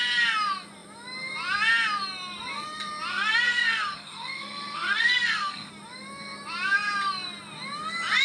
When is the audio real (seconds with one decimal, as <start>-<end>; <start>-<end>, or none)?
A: 0.0-3.1; 5.7-8.2